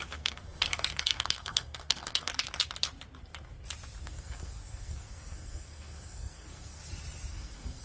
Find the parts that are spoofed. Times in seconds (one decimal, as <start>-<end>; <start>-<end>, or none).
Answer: 0.0-2.3; 4.0-6.8; 7.3-7.8